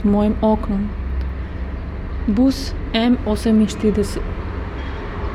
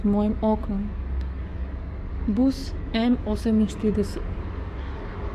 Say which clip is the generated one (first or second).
second